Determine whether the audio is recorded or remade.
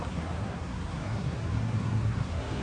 remade